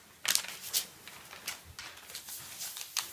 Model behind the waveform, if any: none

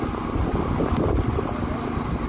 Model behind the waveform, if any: none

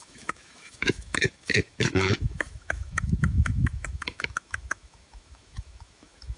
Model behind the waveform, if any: autoencoder, DAC-VAE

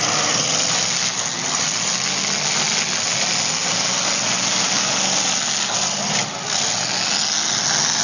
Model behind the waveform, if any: none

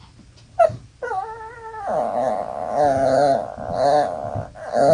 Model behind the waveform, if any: none